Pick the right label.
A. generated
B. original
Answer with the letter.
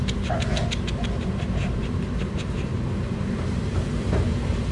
A